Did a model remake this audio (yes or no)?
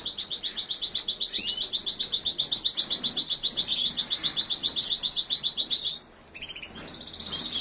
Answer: no